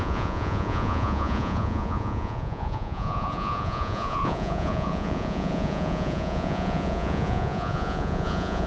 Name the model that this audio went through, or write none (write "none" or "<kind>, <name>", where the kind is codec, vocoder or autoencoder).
vocoder, Vocos